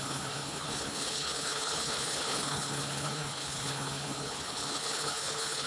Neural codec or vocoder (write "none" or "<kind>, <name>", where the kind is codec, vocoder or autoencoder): codec, HILCodec